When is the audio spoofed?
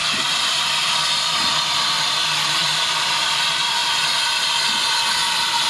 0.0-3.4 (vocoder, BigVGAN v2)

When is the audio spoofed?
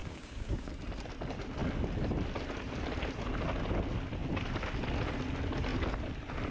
0.0-0.7 (codec, DAC)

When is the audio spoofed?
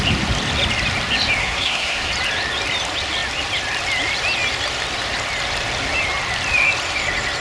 1.4-2.1 (codec, SNAC)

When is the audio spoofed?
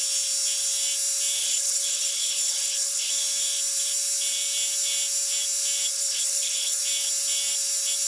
1.4-3.1 (codec, HILCodec); 5.9-6.8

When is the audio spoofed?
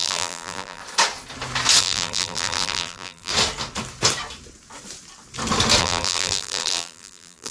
0.0-0.8 (vocoder, BigVGAN v2); 1.8-3.3; 5.8-7.5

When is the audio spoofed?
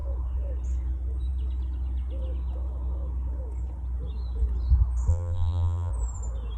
5.1-5.9 (vocoder, BigVGAN v2)